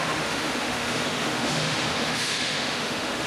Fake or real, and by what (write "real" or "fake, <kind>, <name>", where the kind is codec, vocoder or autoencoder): fake, autoencoder, DAC-VAE